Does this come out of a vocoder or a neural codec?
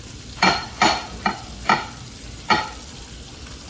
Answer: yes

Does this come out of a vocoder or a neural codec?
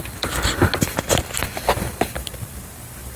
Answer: no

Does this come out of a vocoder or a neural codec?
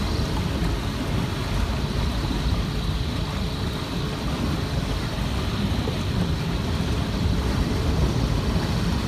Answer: no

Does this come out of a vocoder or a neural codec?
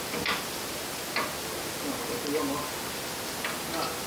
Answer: no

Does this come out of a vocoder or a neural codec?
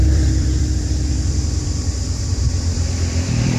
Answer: yes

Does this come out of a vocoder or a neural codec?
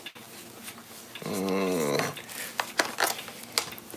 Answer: no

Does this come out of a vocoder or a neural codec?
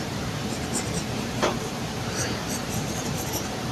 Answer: yes